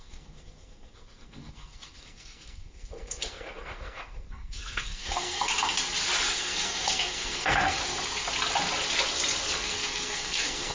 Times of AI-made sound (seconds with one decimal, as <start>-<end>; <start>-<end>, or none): 0.0-5.5; 6.3-7.8; 9.5-10.7